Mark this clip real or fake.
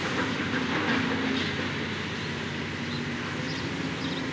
real